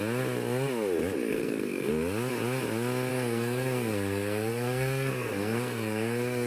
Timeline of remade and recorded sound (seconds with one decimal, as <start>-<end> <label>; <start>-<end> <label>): 0.0-1.3 recorded; 1.3-1.9 remade; 1.9-3.1 recorded; 3.1-6.5 remade